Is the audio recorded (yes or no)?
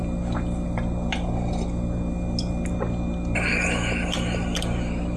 yes